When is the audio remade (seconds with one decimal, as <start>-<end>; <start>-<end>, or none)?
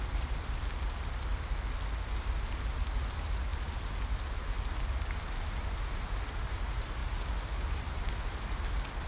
none